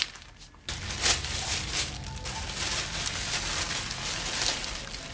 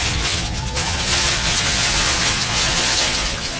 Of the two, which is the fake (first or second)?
second